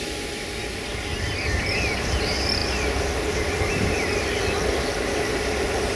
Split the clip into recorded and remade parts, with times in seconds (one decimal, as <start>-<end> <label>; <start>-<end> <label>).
0.0-6.0 recorded

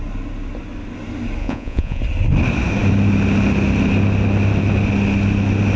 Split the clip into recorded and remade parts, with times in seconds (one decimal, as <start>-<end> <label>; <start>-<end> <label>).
0.0-1.4 recorded; 1.4-2.0 remade; 2.0-5.8 recorded

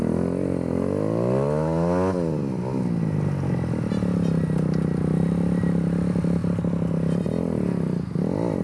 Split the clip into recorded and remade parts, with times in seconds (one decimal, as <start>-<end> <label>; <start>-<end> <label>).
0.0-8.6 recorded

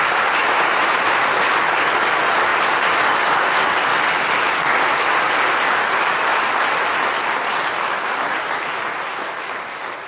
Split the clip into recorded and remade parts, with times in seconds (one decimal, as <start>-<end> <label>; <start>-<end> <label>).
0.0-0.4 recorded; 0.4-1.4 remade; 1.4-10.1 recorded

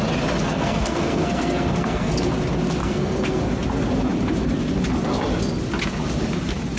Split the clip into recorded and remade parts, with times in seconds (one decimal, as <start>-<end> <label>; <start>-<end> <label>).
0.0-0.4 recorded; 0.4-2.3 remade; 2.3-2.8 recorded; 2.8-3.4 remade; 3.4-6.8 recorded